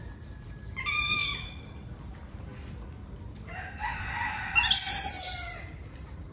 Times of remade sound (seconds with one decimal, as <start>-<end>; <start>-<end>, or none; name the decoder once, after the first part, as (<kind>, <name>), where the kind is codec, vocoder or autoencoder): none